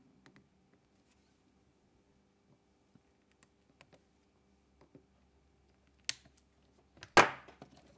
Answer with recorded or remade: recorded